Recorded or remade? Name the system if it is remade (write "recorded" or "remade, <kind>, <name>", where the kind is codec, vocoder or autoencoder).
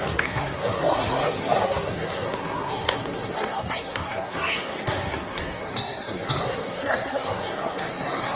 remade, codec, SNAC